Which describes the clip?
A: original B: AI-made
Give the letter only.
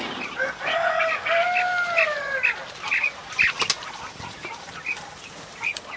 A